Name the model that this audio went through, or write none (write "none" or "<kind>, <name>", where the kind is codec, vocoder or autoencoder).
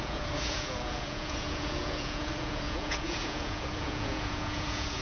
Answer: vocoder, Vocos